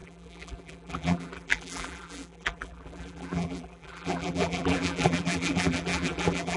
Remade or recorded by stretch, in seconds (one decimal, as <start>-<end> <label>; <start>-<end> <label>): 0.0-6.6 remade